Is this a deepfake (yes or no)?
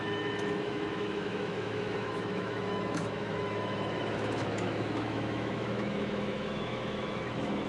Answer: yes